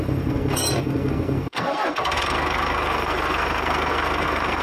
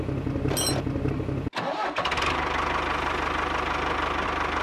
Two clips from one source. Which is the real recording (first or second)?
second